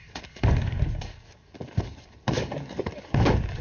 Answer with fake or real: fake